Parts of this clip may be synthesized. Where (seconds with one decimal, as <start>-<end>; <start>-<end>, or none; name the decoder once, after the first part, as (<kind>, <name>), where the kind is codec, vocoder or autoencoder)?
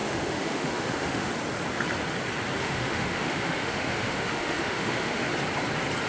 0.0-1.3 (autoencoder, DAC-VAE); 2.6-5.3